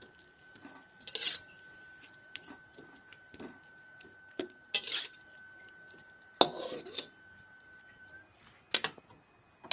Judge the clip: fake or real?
real